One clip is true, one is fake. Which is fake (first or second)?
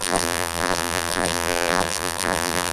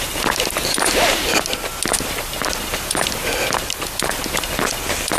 first